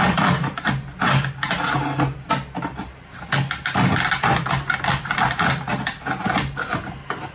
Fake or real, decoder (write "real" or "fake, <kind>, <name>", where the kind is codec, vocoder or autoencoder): real